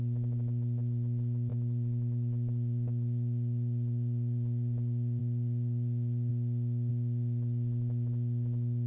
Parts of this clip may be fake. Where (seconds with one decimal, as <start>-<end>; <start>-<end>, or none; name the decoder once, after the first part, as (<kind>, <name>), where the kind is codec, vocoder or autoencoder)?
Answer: 0.0-6.3 (vocoder, Vocos); 6.9-8.9